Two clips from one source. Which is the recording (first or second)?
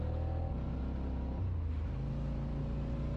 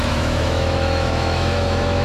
first